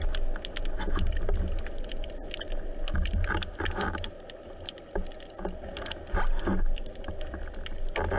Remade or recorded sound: recorded